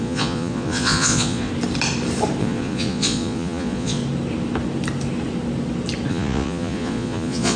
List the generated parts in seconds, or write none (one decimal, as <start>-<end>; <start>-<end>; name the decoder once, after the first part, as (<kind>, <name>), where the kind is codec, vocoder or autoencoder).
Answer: 0.0-1.5 (vocoder, Vocos); 2.4-4.0; 6.1-7.6